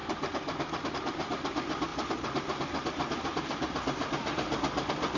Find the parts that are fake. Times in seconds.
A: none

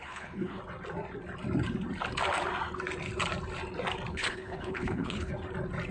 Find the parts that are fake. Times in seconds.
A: 0.0-0.6 (codec, HILCodec); 4.1-5.3

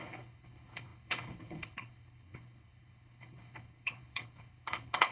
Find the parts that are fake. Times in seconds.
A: 0.0-5.1 (codec, HILCodec)